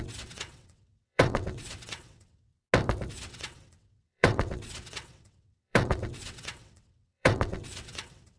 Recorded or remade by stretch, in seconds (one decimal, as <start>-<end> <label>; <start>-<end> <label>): 0.0-2.5 remade; 2.5-3.1 recorded; 3.1-8.4 remade